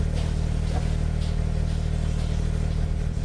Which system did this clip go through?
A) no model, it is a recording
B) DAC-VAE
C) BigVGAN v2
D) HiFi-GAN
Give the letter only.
A